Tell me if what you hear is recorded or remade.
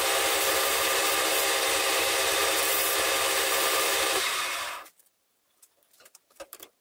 remade